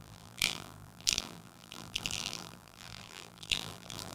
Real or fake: fake